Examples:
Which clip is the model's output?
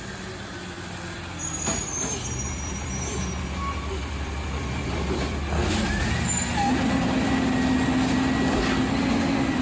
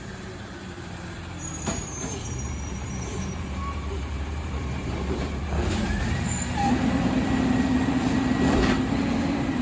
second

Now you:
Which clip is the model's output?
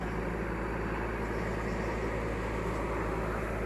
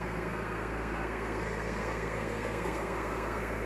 second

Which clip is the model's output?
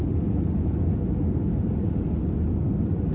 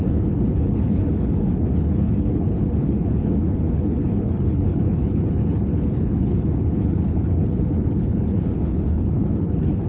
second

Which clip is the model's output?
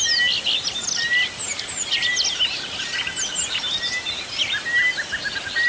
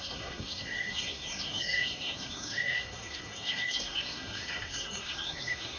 second